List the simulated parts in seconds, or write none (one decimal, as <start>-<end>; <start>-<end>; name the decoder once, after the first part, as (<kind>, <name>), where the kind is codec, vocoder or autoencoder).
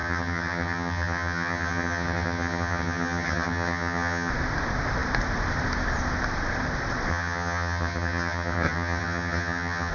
0.0-4.3 (vocoder, HiFi-GAN); 7.1-9.9